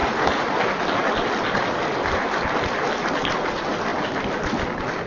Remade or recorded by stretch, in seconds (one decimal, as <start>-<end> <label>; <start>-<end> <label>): 0.0-5.1 recorded